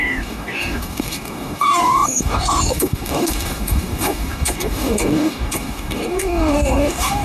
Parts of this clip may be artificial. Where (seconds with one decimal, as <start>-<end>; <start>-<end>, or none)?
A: 0.0-7.2